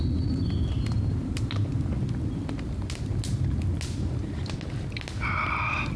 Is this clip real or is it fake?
real